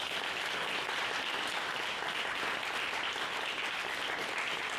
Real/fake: real